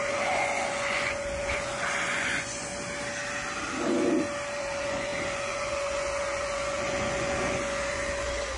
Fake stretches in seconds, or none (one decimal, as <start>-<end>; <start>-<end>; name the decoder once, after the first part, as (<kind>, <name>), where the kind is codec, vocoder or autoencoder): 0.0-2.7 (vocoder, Vocos); 4.6-8.6